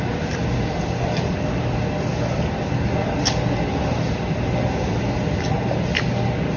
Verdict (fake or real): real